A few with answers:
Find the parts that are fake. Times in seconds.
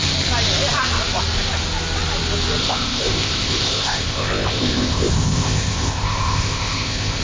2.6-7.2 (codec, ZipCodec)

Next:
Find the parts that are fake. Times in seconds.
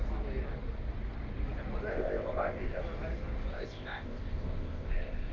1.9-2.8 (codec, ZipCodec); 3.5-5.3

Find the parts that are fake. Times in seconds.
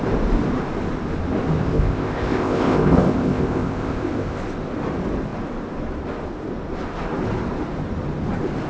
1.6-4.4 (codec, ZipCodec)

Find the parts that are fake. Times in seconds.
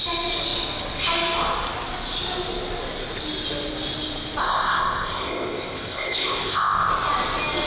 4.4-6.9 (codec, ZipCodec)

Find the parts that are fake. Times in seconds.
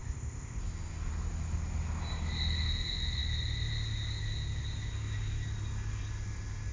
0.0-0.6 (codec, ZipCodec)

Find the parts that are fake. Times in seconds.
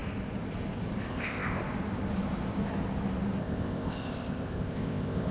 1.1-1.6 (codec, ZipCodec); 3.4-5.3